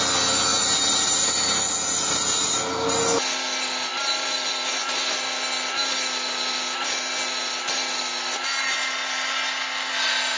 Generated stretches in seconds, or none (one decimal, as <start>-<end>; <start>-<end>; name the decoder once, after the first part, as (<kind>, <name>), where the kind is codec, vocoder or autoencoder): 0.5-1.7 (vocoder, BigVGAN v2); 3.9-4.9